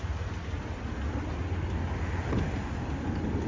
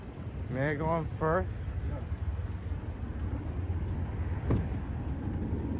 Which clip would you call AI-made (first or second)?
second